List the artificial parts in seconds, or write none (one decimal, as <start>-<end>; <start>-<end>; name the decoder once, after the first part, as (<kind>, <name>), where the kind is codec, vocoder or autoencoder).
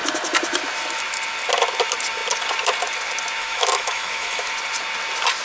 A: 3.4-4.5 (autoencoder, DAC-VAE)